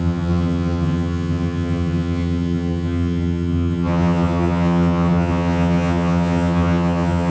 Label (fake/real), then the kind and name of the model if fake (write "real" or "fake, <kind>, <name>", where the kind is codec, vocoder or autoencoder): fake, vocoder, HiFi-GAN